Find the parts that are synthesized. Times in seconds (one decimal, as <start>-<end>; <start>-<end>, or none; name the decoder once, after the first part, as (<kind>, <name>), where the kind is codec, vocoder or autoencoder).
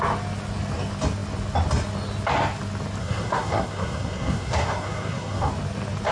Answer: 3.0-5.5 (codec, SNAC)